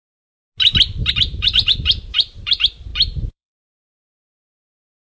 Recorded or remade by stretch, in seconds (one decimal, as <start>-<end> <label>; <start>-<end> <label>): 0.0-1.1 recorded; 1.1-5.1 remade